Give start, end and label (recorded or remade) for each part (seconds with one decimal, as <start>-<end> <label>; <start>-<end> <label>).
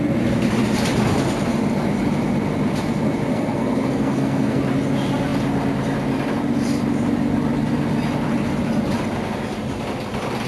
0.0-3.3 recorded; 3.3-4.6 remade; 4.6-10.5 recorded